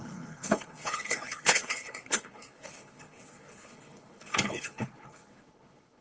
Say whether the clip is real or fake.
fake